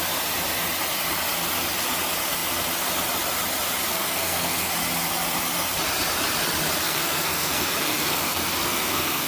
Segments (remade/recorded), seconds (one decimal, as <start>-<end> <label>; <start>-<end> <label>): 0.0-3.9 recorded; 3.9-4.7 remade; 4.7-6.8 recorded; 6.8-9.3 remade